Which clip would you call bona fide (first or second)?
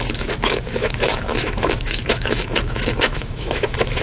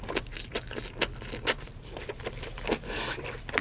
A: second